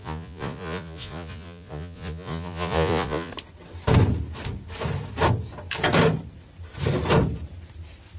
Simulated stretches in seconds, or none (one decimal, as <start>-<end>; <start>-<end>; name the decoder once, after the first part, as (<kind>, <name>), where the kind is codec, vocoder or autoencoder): 0.0-3.3 (vocoder, Vocos)